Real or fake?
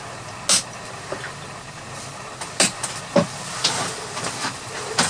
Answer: real